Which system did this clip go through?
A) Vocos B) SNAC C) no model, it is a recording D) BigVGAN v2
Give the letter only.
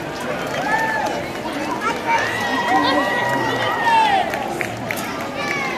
C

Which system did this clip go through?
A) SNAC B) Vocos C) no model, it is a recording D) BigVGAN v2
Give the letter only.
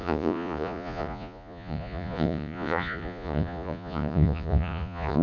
B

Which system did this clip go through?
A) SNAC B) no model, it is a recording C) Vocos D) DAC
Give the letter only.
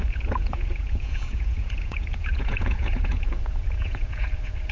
C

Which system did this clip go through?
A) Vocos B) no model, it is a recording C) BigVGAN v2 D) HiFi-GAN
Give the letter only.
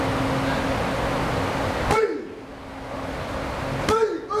B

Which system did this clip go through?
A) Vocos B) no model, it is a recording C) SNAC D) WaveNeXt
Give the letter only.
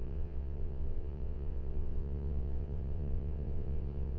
D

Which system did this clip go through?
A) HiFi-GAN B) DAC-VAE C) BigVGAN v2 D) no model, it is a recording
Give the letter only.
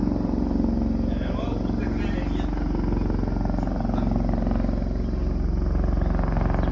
D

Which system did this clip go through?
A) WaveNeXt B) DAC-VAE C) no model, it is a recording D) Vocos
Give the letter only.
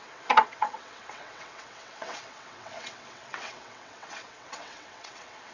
A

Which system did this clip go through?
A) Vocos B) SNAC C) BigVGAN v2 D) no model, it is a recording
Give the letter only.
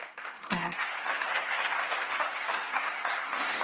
B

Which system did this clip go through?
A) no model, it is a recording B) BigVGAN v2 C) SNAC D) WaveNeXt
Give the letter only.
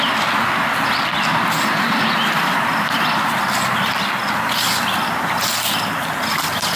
A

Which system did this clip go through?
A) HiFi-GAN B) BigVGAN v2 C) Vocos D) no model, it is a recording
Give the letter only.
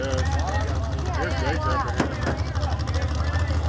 D